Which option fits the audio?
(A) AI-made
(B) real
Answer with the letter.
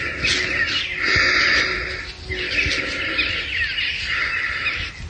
B